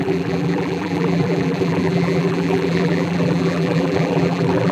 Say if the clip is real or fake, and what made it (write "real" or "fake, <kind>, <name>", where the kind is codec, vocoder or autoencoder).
fake, vocoder, BigVGAN v2